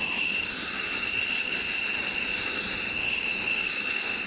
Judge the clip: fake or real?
real